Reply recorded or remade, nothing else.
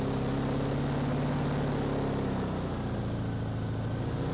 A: recorded